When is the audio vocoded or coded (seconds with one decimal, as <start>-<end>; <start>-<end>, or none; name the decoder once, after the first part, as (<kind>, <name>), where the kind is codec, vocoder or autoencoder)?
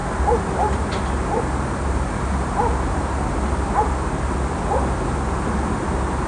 none